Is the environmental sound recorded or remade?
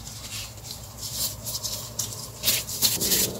remade